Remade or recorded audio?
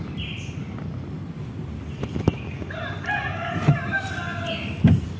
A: recorded